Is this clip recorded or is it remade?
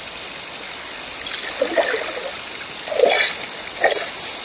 recorded